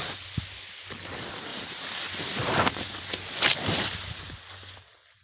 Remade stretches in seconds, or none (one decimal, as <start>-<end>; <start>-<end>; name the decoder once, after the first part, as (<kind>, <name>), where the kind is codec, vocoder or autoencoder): none